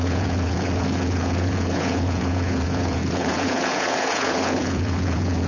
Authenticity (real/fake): fake